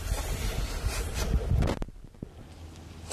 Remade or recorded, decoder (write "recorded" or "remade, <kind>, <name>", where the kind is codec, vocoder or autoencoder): recorded